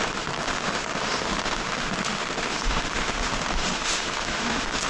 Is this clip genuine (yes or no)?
no